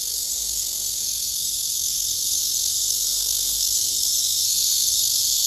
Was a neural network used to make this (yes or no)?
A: yes